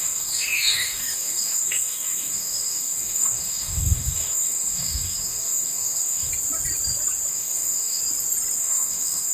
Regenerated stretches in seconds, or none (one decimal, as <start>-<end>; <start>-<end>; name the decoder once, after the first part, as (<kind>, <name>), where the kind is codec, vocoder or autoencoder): 0.0-6.3 (codec, DAC); 7.3-8.0; 8.6-9.3